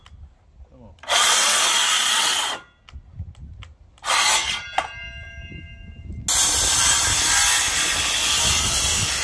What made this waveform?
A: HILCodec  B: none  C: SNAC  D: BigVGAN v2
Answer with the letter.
B